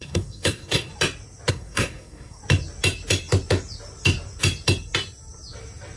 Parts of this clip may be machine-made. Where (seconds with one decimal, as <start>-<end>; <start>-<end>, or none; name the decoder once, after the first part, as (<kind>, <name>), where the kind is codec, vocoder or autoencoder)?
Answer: 0.0-0.9 (codec, SNAC); 1.5-2.4